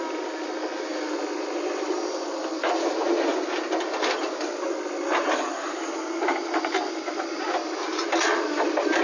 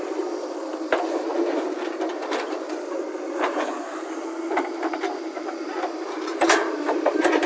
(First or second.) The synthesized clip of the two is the second